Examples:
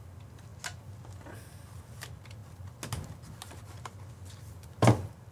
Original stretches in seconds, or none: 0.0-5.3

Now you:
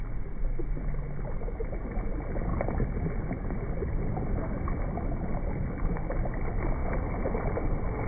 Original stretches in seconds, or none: 0.0-8.1

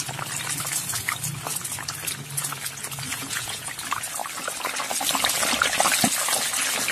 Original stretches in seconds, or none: 0.0-3.1; 3.7-6.9